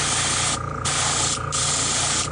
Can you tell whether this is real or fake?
real